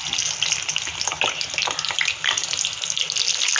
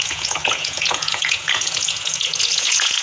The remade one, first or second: second